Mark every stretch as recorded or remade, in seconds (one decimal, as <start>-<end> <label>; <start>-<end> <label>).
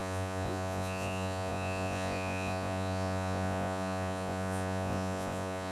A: 0.0-5.7 remade